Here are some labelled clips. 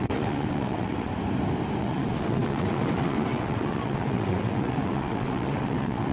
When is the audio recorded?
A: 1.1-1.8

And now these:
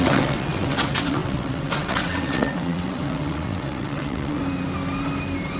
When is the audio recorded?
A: 4.4-5.6

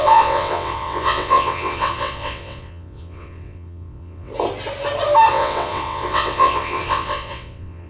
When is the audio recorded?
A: 4.3-5.3

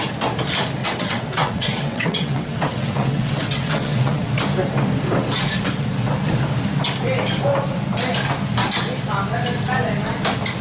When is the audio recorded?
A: 0.0-0.8; 4.3-10.6

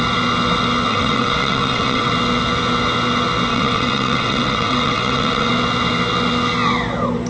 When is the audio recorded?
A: 0.0-0.9; 2.1-3.5; 5.5-7.3

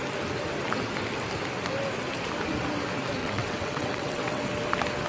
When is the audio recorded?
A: 0.0-3.2; 4.4-5.1